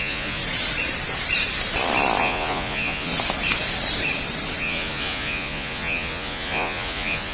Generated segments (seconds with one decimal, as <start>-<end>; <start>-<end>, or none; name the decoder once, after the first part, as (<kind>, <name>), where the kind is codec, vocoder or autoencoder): 0.0-0.4 (vocoder, Vocos); 2.2-3.1; 4.6-7.3